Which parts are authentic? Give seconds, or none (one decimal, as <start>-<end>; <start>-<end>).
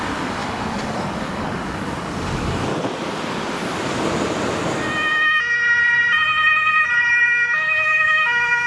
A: 2.7-7.1